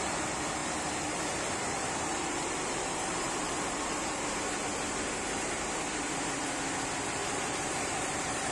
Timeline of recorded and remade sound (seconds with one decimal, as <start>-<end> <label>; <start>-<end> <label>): 0.0-0.6 recorded; 0.6-4.2 remade; 4.2-7.2 recorded; 7.2-8.5 remade

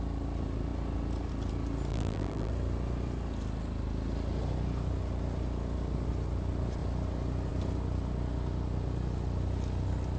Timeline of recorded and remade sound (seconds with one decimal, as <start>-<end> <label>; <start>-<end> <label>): 0.0-1.9 recorded; 1.9-2.5 remade; 2.5-10.2 recorded

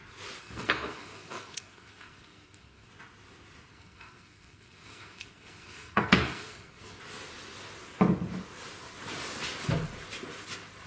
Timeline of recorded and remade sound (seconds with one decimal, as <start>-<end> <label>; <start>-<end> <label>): 0.0-0.4 recorded; 0.4-2.9 remade; 2.9-3.7 recorded; 3.7-7.0 remade; 7.0-10.9 recorded

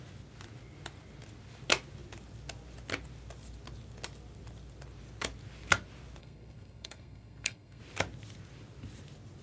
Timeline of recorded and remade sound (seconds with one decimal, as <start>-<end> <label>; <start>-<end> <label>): 0.0-6.2 recorded; 6.2-7.8 remade; 7.8-9.4 recorded

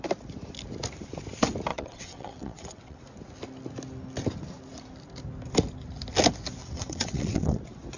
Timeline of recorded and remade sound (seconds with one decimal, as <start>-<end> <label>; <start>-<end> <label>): 0.0-1.7 recorded; 1.7-3.0 remade; 3.0-6.6 recorded; 6.6-7.6 remade; 7.6-8.0 recorded